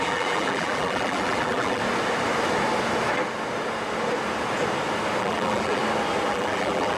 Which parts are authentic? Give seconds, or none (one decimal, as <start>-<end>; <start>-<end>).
1.8-5.2; 5.8-6.3